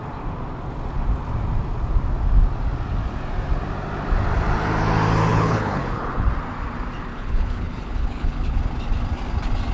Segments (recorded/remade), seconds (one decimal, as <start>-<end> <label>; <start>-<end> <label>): 0.0-5.3 recorded; 5.3-6.3 remade; 6.3-7.1 recorded; 7.1-8.6 remade; 8.6-9.7 recorded